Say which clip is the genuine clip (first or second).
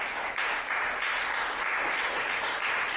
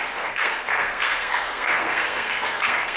first